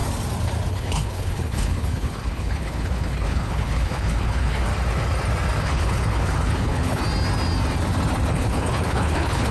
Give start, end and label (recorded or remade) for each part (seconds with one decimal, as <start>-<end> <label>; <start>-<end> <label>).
0.0-0.7 recorded; 0.7-4.7 remade; 4.7-5.6 recorded; 5.6-7.0 remade; 7.0-8.3 recorded; 8.3-9.5 remade